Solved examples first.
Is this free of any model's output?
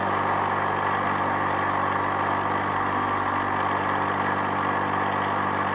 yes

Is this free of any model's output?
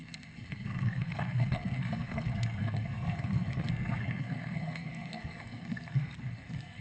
no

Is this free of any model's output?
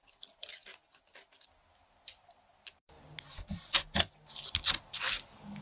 yes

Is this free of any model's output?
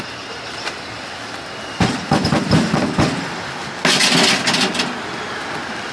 yes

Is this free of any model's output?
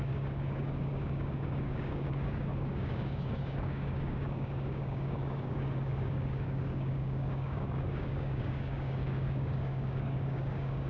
no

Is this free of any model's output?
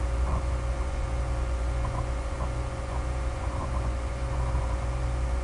no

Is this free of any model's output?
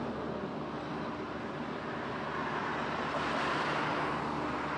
yes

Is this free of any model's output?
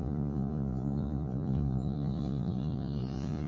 no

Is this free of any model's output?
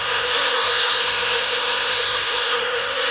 no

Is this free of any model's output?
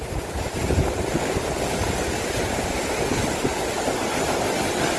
yes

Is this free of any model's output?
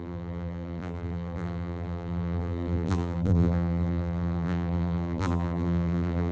no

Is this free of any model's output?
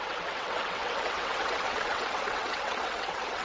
no